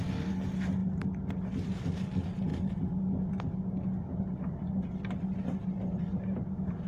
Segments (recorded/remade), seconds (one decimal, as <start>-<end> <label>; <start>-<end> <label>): 0.0-6.9 recorded